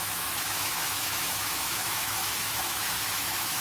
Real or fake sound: fake